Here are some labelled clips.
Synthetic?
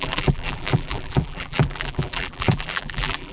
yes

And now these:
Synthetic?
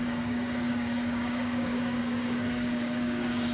yes